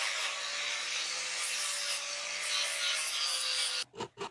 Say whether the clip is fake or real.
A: real